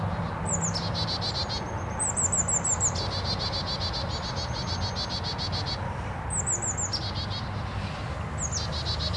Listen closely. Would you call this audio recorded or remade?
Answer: recorded